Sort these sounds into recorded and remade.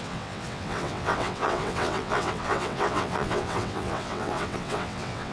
remade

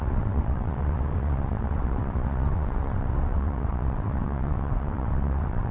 remade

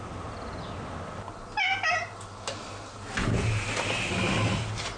recorded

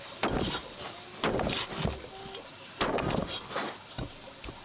recorded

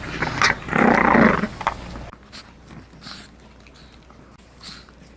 recorded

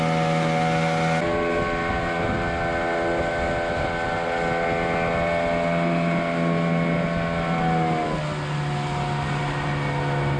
recorded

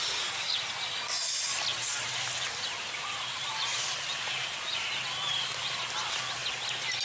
recorded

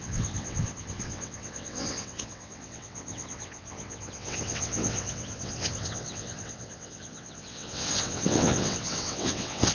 remade